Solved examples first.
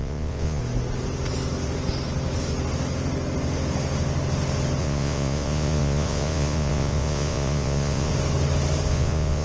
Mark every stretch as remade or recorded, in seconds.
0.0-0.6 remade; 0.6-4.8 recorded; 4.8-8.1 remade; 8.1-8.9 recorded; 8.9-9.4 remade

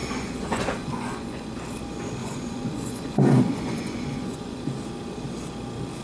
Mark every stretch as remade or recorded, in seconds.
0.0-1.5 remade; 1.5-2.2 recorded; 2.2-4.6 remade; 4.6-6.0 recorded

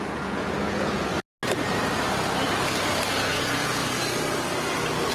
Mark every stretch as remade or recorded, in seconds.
0.0-1.1 remade; 1.1-3.1 recorded; 3.1-3.8 remade; 3.8-5.1 recorded

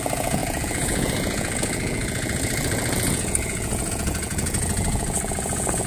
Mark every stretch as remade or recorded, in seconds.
0.0-5.9 remade